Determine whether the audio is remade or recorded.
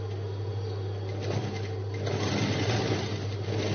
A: recorded